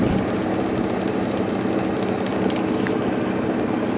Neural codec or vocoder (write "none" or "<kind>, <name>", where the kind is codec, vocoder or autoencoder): none